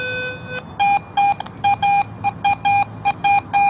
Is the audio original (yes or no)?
yes